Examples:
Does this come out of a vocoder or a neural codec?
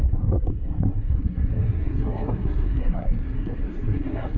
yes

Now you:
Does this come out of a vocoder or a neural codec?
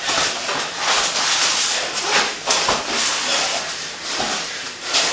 no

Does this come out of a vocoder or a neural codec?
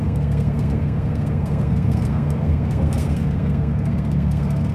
yes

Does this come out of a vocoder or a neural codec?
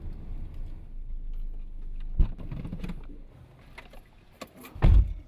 no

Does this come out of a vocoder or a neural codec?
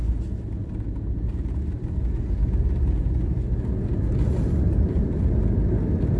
no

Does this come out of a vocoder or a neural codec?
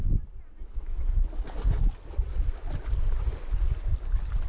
no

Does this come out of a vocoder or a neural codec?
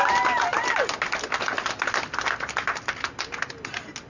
no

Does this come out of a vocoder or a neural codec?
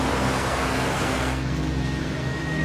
yes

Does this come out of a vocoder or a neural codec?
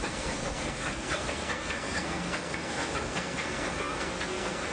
yes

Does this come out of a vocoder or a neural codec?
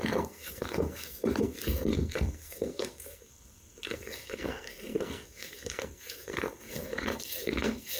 yes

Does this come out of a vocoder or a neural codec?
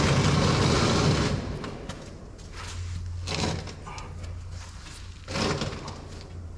no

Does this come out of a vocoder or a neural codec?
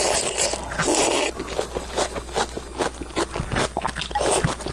no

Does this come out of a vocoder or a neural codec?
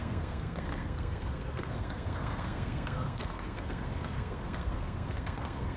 yes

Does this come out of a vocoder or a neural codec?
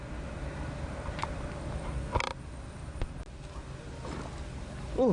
no